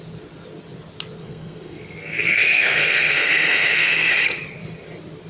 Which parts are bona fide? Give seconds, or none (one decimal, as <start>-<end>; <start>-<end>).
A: 0.0-1.2; 4.1-5.3